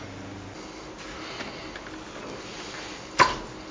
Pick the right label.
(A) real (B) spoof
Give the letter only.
A